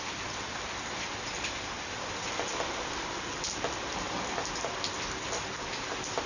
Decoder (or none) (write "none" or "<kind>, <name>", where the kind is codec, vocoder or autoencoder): none